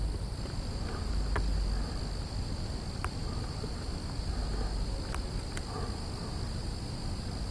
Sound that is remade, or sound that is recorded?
recorded